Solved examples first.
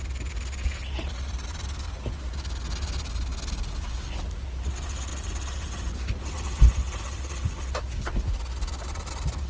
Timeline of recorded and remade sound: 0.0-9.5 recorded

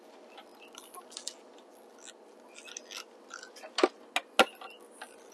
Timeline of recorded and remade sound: 0.0-5.3 recorded